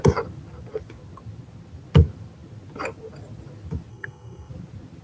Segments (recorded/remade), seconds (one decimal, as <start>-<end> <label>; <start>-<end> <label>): 0.0-3.9 recorded; 3.9-4.5 remade; 4.5-5.0 recorded